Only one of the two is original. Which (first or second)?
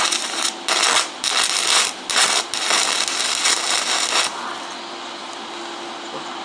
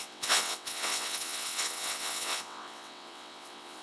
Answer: first